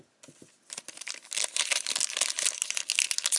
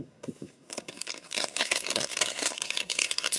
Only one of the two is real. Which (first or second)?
first